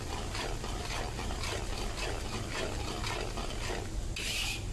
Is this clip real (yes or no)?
yes